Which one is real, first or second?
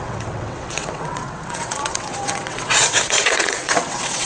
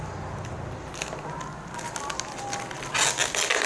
second